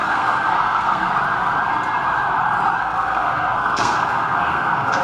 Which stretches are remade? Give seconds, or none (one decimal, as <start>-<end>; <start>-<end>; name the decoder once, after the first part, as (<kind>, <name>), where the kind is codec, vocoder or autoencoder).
0.0-1.1 (codec, SNAC); 2.8-5.0